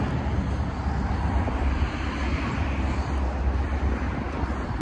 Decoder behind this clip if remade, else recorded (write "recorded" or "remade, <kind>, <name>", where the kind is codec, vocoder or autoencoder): recorded